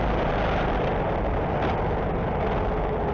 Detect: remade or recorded recorded